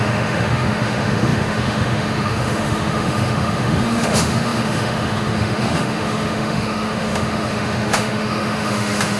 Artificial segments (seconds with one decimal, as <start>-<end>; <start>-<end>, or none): 0.0-9.2